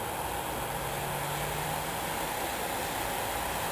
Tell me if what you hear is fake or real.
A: real